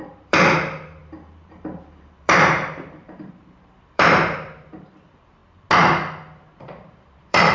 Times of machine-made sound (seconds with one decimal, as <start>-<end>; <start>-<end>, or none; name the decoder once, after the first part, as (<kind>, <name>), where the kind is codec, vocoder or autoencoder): 0.0-5.4 (vocoder, BigVGAN v2); 6.4-7.5